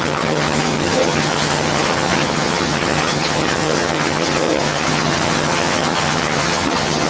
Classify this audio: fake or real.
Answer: fake